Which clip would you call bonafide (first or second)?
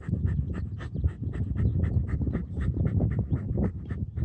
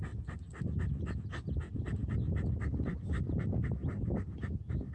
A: second